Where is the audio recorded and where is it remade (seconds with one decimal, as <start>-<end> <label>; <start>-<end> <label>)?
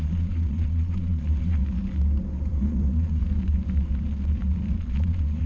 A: 0.0-1.6 remade; 1.6-2.5 recorded; 2.5-3.2 remade; 3.2-4.8 recorded; 4.8-5.5 remade